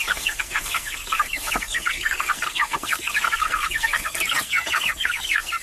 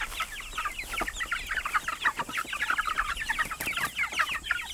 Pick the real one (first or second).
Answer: second